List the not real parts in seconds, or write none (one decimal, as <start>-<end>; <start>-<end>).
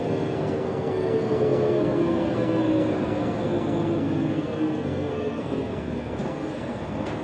0.0-7.2